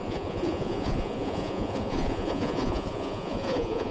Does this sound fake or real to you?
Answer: fake